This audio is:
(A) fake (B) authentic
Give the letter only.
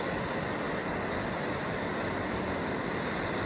B